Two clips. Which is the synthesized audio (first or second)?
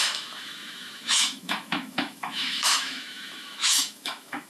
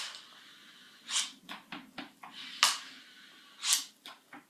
first